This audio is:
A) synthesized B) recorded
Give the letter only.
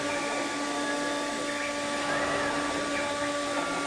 B